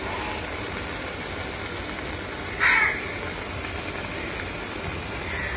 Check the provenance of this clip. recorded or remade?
recorded